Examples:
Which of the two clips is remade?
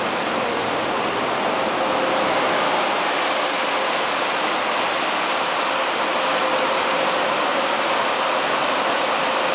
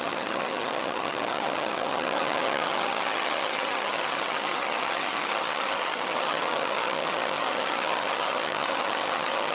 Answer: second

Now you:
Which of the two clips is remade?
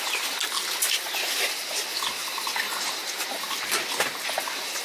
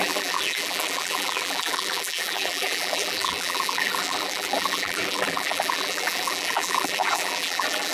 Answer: second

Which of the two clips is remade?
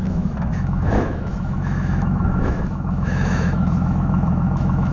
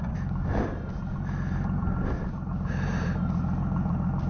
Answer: first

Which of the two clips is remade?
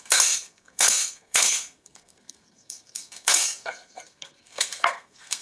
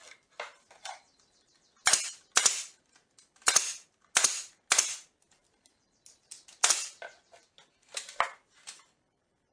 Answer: first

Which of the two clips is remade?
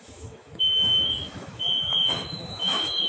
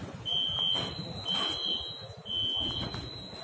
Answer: first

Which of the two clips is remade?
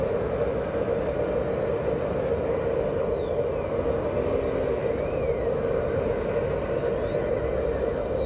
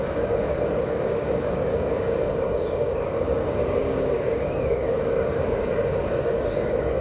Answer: second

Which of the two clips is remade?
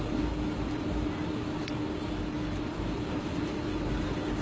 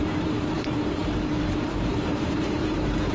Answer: second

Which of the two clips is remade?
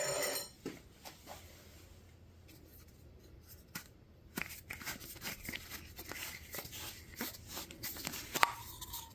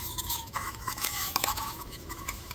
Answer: second